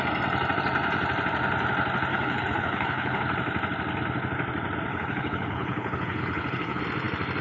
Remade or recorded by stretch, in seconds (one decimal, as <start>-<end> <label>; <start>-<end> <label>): 0.0-2.1 recorded; 2.1-3.2 remade; 3.2-4.9 recorded; 4.9-6.8 remade; 6.8-7.4 recorded